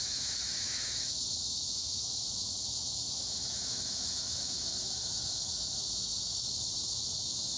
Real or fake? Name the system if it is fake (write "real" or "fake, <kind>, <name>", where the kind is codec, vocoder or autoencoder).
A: fake, autoencoder, DAC-VAE